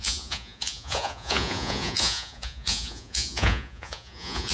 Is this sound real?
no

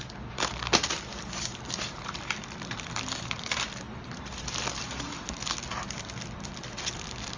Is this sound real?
no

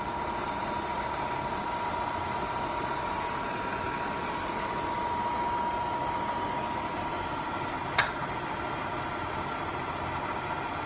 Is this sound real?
yes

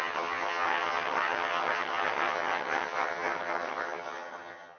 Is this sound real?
no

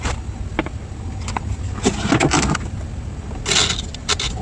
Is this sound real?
yes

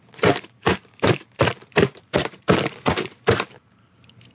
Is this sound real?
no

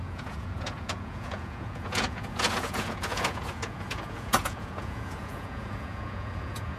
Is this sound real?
no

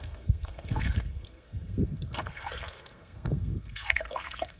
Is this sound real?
no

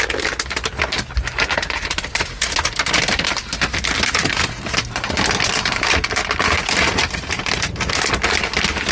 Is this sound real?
yes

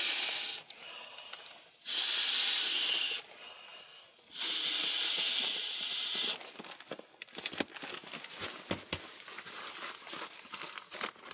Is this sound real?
yes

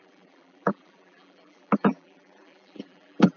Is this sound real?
no